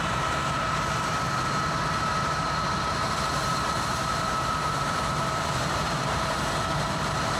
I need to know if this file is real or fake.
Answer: fake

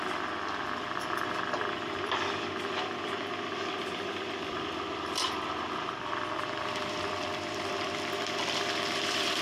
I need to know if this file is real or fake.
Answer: fake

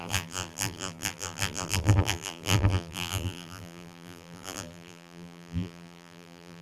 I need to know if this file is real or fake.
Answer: fake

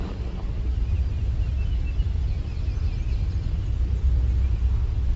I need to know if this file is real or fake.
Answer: real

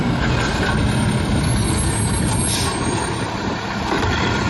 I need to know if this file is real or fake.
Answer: real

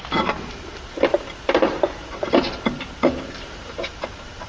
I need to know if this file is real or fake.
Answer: fake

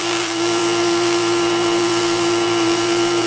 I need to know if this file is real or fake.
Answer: fake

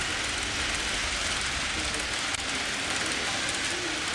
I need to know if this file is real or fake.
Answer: real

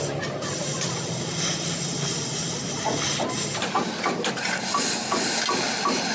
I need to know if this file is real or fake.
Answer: real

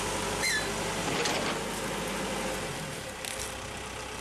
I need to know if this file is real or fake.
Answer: real